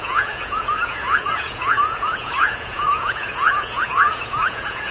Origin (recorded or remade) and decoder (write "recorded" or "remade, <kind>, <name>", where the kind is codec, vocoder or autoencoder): remade, vocoder, Vocos